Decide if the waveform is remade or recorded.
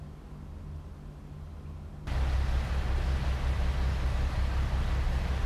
recorded